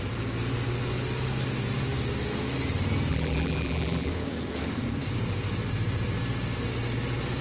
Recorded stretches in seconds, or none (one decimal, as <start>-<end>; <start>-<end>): 0.0-3.1; 4.1-7.4